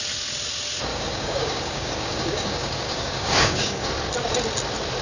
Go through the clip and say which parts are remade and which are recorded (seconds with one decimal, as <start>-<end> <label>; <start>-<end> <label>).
0.0-0.9 recorded; 0.9-3.9 remade; 3.9-5.0 recorded